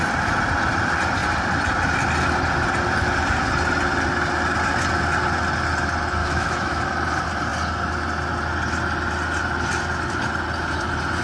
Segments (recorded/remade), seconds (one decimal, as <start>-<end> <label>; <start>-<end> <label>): 0.0-6.2 recorded; 6.2-6.8 remade; 6.8-11.2 recorded